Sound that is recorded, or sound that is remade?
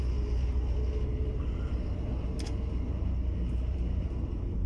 recorded